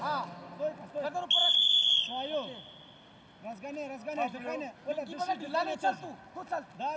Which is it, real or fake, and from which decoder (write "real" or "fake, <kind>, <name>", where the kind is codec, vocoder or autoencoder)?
real